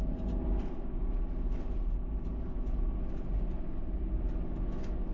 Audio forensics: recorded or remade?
recorded